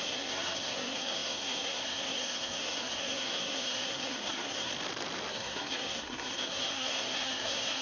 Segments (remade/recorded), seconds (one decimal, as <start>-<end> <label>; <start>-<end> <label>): 0.0-4.7 remade; 4.7-5.3 recorded; 5.3-7.8 remade